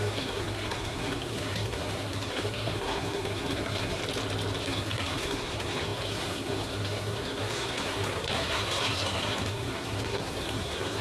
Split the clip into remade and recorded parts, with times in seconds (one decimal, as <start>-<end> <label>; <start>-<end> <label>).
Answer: 0.0-4.0 remade; 4.0-4.6 recorded; 4.6-11.0 remade